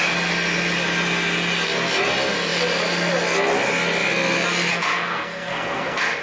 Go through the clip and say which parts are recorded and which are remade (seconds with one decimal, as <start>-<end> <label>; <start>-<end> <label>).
0.0-4.7 recorded; 4.7-6.2 remade

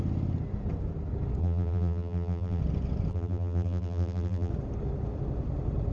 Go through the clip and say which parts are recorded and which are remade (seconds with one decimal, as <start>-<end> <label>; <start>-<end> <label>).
0.0-1.4 recorded; 1.4-2.6 remade; 2.6-3.1 recorded; 3.1-4.5 remade; 4.5-5.9 recorded

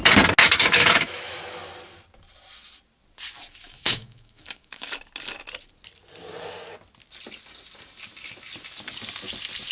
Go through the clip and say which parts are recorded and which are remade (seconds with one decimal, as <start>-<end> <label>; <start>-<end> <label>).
0.0-0.4 recorded; 0.4-1.4 remade; 1.4-3.6 recorded; 3.6-4.9 remade; 4.9-9.7 recorded